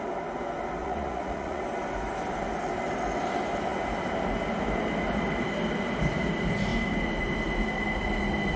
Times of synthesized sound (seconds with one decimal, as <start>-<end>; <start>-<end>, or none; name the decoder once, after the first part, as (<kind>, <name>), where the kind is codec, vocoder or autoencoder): 0.8-1.6 (vocoder, Vocos)